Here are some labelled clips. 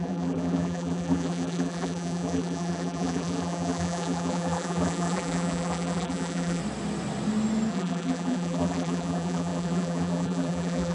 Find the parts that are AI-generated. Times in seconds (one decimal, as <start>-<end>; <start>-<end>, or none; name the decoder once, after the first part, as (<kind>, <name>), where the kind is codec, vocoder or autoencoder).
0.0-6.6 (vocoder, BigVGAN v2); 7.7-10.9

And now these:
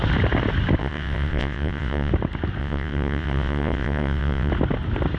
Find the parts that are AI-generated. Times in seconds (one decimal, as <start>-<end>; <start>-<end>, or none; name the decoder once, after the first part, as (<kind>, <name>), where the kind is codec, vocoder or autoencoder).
0.8-2.1 (vocoder, WaveNeXt); 2.6-4.5

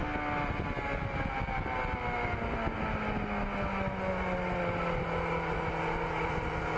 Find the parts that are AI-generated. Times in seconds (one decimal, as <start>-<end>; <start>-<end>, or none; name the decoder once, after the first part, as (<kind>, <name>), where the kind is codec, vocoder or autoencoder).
none